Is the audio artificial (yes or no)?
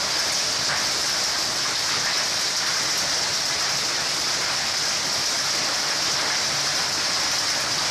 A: no